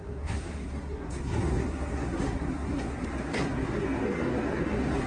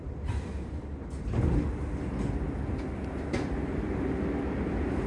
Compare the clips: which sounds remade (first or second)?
first